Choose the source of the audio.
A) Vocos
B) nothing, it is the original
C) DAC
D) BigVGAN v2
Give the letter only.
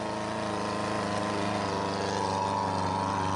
B